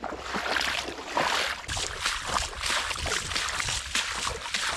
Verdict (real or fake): real